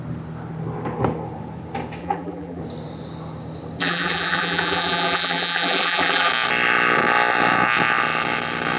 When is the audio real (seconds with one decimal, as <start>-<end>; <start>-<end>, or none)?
0.0-2.0; 2.6-3.8; 6.3-8.8